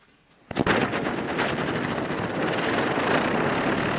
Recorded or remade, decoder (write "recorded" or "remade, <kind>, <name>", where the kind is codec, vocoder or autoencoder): recorded